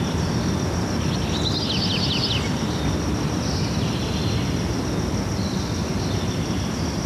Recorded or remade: recorded